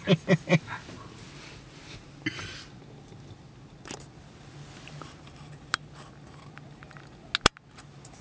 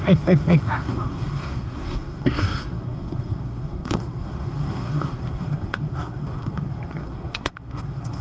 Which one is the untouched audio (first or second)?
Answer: first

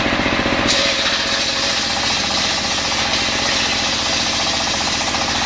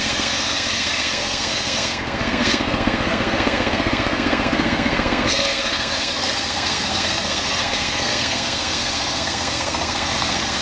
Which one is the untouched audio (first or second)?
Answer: first